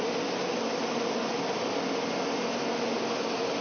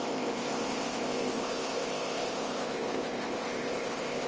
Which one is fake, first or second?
second